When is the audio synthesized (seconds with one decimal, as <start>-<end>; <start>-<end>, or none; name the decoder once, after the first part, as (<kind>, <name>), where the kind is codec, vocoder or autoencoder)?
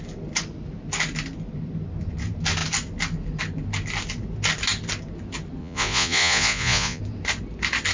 5.6-7.0 (vocoder, Vocos)